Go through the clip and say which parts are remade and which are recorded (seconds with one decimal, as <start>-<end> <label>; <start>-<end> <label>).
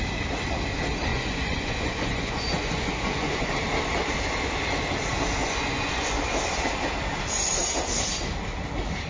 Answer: 0.0-1.1 recorded; 1.1-3.5 remade; 3.5-5.4 recorded; 5.4-6.2 remade; 6.2-9.1 recorded